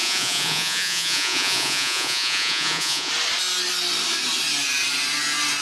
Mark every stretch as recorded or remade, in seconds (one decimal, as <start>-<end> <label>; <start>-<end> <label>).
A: 0.0-3.1 remade; 3.1-5.6 recorded